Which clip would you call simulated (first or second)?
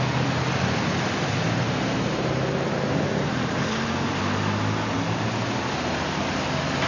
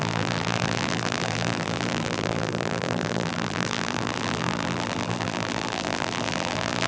second